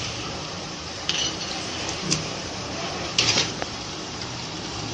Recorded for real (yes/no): no